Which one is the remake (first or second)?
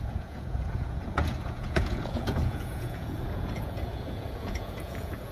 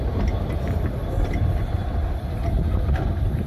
first